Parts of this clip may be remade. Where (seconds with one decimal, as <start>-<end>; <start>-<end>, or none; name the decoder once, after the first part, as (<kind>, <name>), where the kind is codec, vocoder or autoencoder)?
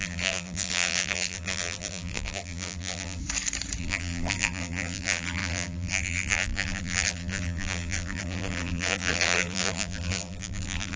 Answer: 0.0-3.2 (vocoder, BigVGAN v2); 3.8-11.0